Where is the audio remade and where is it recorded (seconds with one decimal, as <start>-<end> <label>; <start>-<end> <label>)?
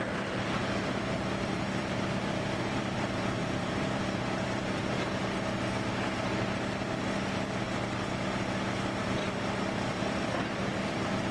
0.0-5.2 remade; 5.2-9.0 recorded; 9.0-11.3 remade